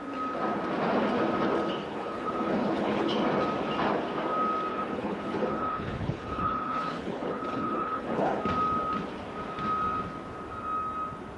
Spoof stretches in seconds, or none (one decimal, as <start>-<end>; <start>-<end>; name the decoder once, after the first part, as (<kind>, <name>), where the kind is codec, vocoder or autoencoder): 1.9-3.2 (codec, HILCodec); 4.7-8.4